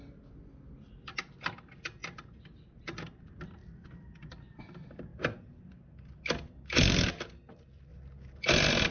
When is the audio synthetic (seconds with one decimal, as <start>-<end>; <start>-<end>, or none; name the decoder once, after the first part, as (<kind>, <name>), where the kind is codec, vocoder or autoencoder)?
none